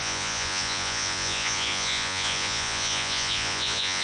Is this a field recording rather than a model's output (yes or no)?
no